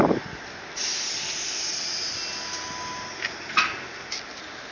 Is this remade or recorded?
recorded